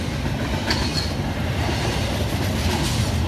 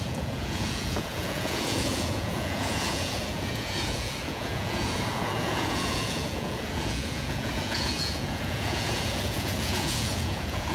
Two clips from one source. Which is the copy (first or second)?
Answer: second